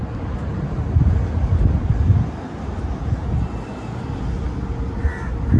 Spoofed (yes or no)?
no